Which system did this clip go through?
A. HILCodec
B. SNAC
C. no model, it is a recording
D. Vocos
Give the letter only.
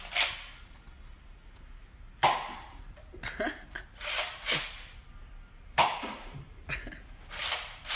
C